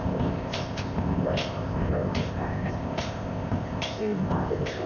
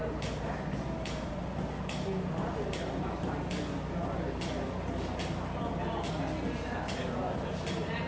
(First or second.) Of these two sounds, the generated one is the first